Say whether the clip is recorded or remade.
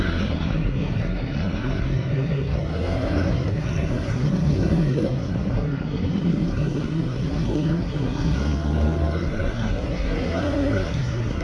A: remade